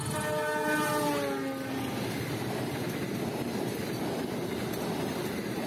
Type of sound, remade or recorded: recorded